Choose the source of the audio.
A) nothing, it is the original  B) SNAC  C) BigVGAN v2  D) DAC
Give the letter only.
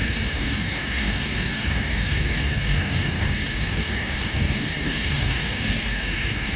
D